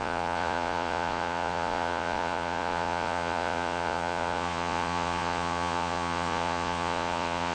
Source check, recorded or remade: remade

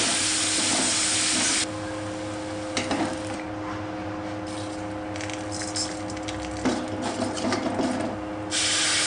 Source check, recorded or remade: recorded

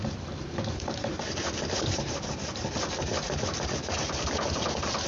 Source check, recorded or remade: recorded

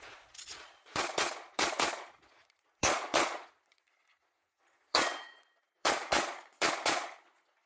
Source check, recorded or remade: remade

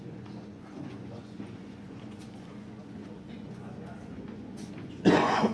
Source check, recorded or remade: remade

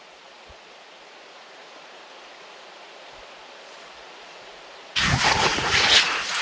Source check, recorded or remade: remade